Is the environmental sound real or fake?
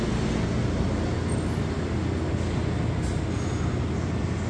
real